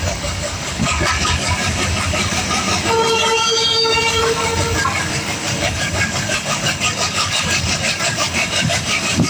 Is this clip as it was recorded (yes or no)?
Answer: no